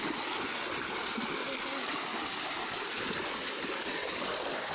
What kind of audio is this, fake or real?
real